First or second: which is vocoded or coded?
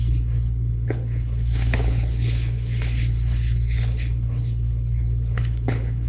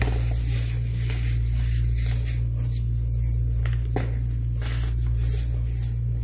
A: first